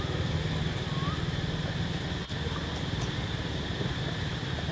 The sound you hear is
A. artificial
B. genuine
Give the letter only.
B